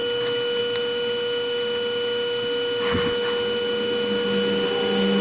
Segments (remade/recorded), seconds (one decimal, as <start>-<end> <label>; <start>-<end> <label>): 0.0-5.2 recorded